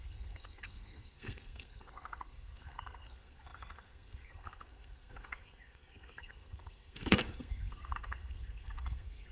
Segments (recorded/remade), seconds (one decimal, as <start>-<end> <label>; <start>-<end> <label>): 0.0-9.3 remade